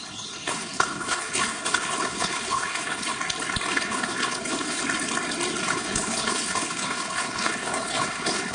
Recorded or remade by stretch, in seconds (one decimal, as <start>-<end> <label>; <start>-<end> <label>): 0.0-3.1 remade; 3.1-3.7 recorded; 3.7-4.8 remade; 4.8-5.7 recorded; 5.7-8.5 remade